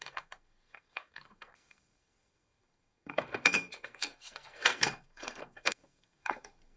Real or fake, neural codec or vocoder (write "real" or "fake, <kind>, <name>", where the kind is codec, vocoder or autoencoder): fake, codec, SNAC